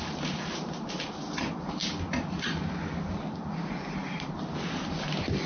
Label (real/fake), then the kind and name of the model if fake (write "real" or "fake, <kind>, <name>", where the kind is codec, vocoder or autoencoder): real